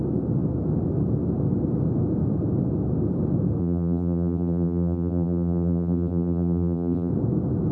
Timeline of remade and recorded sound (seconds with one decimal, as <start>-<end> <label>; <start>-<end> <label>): 0.0-3.6 recorded; 3.6-7.1 remade; 7.1-7.7 recorded